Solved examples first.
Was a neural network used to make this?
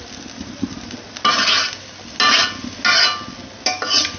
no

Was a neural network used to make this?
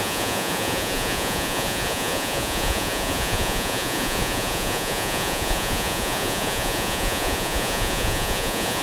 yes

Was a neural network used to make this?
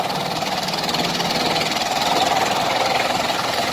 no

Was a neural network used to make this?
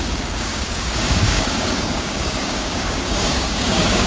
yes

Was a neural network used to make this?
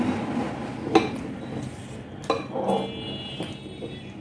no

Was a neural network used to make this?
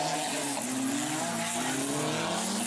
no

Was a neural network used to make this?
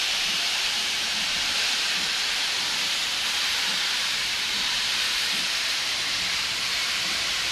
yes